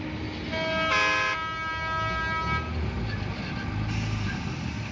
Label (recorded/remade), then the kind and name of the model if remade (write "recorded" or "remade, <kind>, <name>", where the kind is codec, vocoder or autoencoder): recorded